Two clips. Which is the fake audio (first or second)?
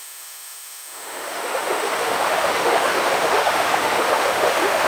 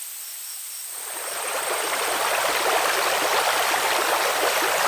first